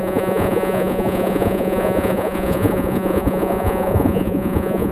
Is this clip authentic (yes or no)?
no